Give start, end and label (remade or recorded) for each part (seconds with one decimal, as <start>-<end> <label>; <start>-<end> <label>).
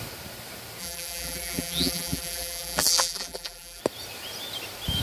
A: 0.0-0.8 recorded; 0.8-3.8 remade; 3.8-5.0 recorded